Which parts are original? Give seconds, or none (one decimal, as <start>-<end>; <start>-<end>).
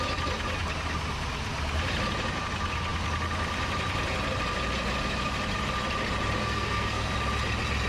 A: 0.0-6.4; 7.1-7.9